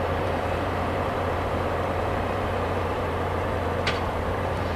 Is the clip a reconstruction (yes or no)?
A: yes